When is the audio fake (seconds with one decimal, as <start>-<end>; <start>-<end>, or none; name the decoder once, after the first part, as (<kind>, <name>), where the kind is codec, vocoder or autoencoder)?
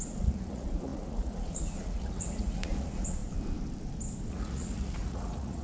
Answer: 0.0-3.2 (vocoder, Vocos); 4.3-5.6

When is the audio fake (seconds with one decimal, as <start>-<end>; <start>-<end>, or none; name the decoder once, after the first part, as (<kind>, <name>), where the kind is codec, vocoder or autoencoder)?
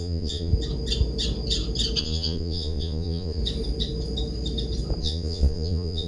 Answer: 0.0-0.5 (vocoder, Vocos); 2.0-3.4; 5.0-6.1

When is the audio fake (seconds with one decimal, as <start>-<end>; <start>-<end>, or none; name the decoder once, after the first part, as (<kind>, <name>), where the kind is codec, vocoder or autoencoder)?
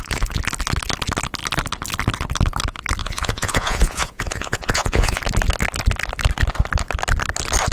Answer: 3.0-5.2 (vocoder, Vocos)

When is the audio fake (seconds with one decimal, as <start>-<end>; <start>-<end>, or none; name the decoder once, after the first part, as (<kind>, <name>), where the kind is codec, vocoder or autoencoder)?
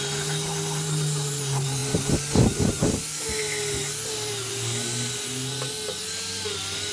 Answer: none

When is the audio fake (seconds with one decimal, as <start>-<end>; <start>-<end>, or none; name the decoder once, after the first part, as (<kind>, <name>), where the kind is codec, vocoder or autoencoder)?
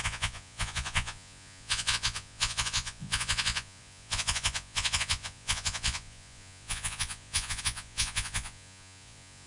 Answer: 0.0-9.5 (vocoder, Vocos)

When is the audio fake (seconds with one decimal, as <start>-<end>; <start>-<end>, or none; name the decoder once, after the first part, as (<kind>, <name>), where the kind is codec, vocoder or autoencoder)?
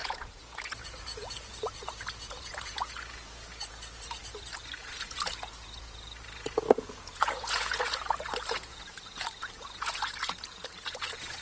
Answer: 0.0-4.2 (vocoder, Vocos); 4.8-11.4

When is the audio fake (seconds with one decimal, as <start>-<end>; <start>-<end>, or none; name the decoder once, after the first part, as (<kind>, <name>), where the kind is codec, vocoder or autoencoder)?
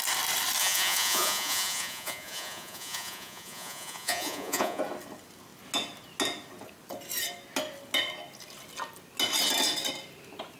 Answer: 0.6-4.8 (vocoder, Vocos)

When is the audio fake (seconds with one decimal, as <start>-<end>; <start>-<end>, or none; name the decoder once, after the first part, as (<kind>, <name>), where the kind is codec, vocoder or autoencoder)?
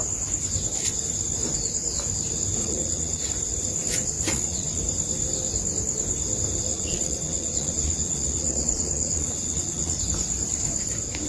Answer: 2.6-3.3 (vocoder, Vocos); 4.3-4.8; 6.7-10.0